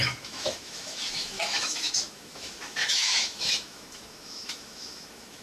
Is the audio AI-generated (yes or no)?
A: yes